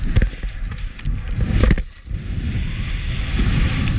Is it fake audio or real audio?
real